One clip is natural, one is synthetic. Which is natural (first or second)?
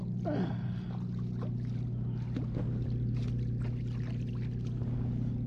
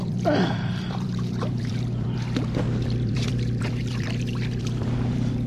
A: first